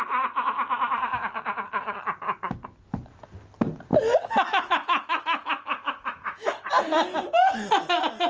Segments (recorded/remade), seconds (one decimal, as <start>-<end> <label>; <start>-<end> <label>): 0.0-3.9 recorded; 3.9-6.7 remade; 6.7-8.3 recorded